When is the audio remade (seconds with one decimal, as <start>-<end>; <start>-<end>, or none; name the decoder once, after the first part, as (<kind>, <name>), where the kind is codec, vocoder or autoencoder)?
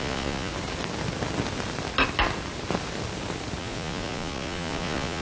0.0-0.5 (vocoder, Vocos); 3.6-5.2